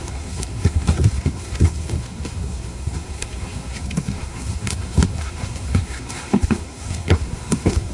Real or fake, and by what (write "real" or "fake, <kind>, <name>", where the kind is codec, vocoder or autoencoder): fake, codec, SNAC